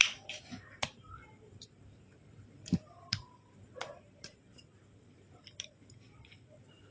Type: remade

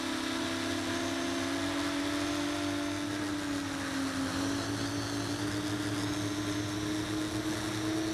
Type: recorded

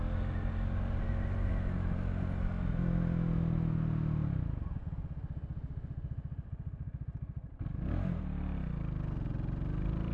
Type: recorded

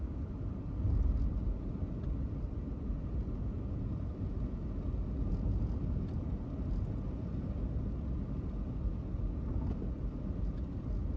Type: recorded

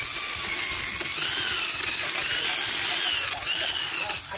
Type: recorded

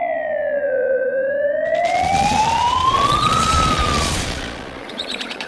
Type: remade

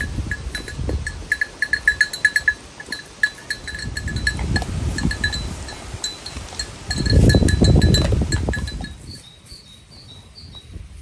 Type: recorded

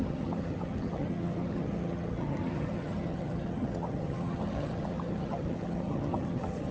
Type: remade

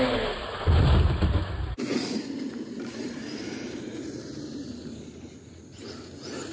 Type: recorded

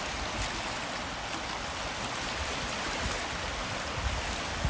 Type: recorded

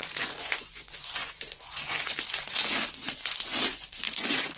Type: remade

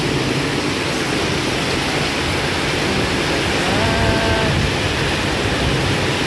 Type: recorded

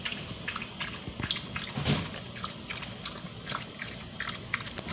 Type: recorded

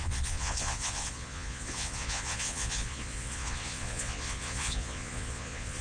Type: remade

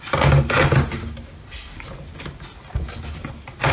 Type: recorded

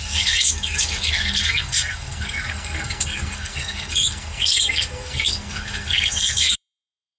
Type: remade